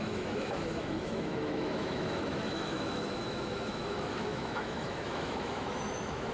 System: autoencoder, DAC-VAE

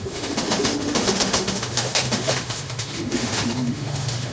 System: autoencoder, DAC-VAE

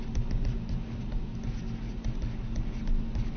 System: none